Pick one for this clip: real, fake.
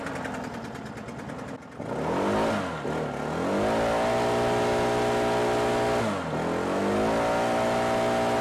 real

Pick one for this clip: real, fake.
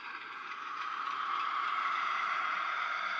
fake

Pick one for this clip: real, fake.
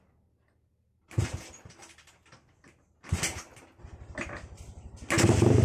real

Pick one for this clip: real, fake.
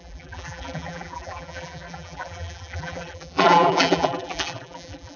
fake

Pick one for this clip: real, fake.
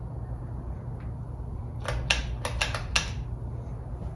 real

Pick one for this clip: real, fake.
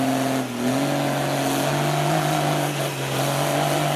real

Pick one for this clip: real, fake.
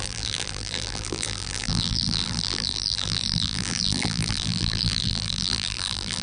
fake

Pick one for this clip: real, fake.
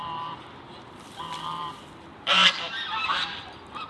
fake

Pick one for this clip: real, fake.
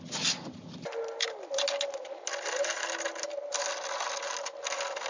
real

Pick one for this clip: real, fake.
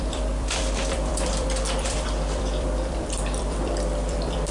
fake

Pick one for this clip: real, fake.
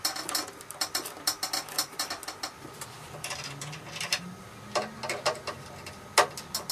real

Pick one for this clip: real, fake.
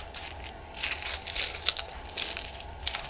real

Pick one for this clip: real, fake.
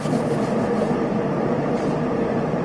fake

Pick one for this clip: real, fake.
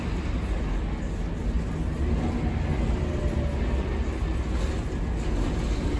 real